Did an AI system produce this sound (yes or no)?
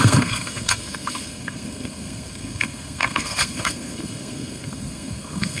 yes